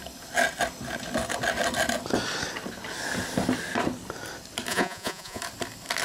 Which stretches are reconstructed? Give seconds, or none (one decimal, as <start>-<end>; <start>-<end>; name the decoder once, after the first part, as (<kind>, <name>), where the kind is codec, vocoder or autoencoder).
4.7-5.4 (vocoder, Vocos)